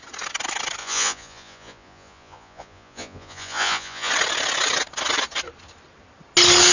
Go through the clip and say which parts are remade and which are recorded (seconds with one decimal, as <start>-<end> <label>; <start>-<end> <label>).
0.0-0.8 recorded; 0.8-4.1 remade; 4.1-6.7 recorded